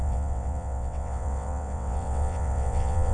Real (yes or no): no